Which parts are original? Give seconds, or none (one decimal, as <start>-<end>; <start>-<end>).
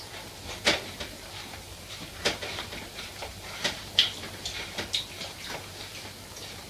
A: 0.0-1.7; 5.7-6.7